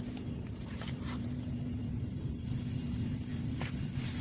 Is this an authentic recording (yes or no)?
no